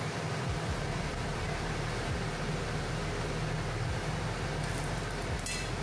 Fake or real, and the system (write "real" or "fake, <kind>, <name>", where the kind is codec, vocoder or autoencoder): real